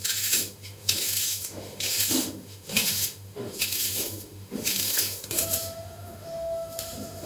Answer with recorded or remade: remade